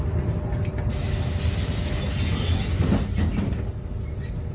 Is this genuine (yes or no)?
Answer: yes